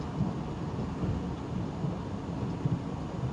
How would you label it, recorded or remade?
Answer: recorded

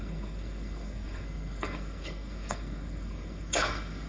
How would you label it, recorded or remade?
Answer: remade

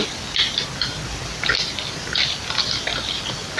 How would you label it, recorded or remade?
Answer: recorded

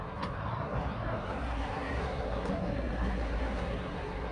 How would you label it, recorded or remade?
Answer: remade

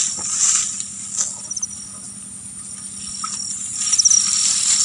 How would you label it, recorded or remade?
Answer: recorded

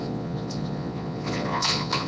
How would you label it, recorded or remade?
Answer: remade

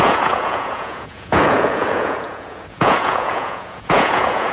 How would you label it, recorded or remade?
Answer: remade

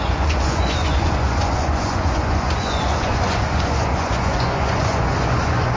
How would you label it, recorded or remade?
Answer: remade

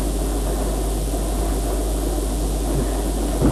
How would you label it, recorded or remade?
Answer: recorded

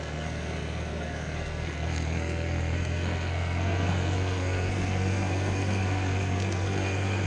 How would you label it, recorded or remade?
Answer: remade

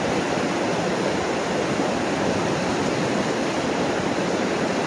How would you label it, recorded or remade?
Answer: remade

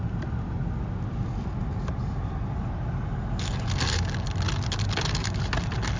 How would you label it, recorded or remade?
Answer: recorded